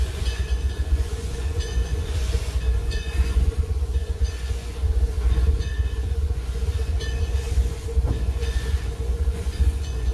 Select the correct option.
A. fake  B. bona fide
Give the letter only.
A